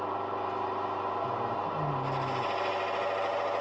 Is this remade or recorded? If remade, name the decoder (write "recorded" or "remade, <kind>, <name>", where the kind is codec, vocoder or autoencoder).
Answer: recorded